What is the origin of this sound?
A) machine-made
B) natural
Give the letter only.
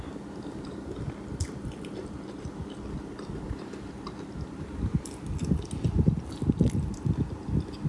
B